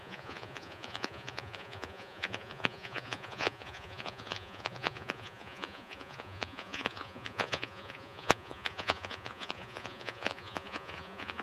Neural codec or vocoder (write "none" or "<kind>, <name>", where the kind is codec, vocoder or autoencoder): vocoder, Vocos